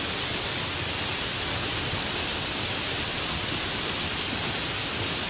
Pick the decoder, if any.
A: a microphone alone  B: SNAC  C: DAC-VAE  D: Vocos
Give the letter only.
A